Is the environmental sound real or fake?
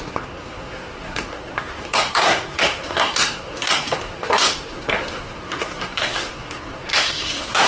fake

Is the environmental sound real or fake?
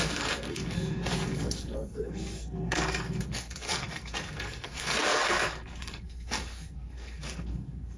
fake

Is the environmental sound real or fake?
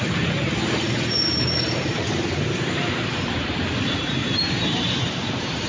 fake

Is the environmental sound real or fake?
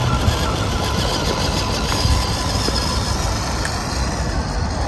real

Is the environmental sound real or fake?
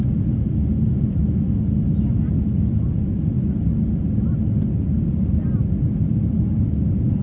real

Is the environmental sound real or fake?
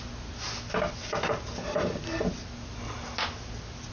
real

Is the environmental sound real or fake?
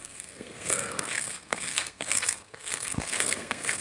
fake